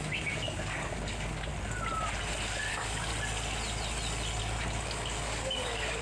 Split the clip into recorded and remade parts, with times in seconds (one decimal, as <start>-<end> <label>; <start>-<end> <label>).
0.0-1.5 remade; 1.5-2.7 recorded; 2.7-3.1 remade; 3.1-4.4 recorded; 4.4-6.0 remade